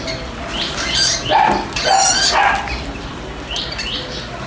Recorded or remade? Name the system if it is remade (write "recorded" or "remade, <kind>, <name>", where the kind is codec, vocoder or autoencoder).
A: recorded